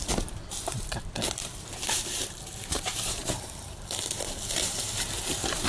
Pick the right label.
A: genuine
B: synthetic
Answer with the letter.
B